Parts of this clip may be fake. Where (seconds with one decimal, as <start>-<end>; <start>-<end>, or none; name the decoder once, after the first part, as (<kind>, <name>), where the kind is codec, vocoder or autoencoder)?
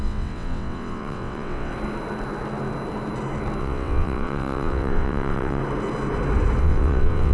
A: 0.0-1.7 (vocoder, WaveNeXt); 3.6-5.6; 6.6-7.3